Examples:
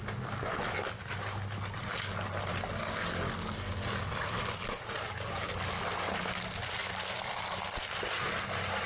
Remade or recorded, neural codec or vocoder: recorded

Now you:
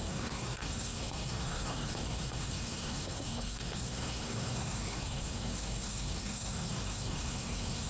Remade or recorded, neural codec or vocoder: remade, codec, SNAC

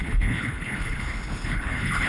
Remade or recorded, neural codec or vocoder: remade, codec, HILCodec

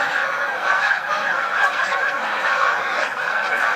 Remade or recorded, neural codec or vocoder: remade, codec, SNAC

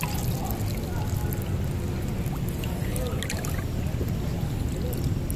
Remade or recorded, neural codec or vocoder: recorded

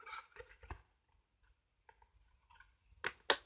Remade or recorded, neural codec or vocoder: recorded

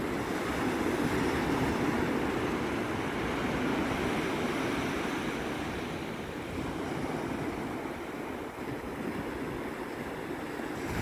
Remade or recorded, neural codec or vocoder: recorded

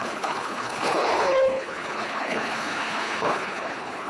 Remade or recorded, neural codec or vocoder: remade, codec, HILCodec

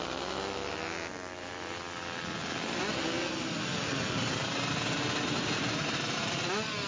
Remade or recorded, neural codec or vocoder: recorded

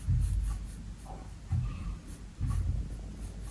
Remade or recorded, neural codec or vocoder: recorded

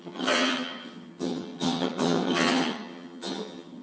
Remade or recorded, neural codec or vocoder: remade, vocoder, HiFi-GAN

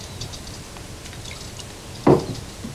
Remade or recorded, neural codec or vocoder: recorded